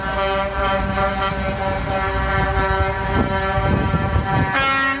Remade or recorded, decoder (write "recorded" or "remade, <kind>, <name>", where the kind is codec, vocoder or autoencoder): recorded